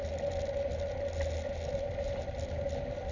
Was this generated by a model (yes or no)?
no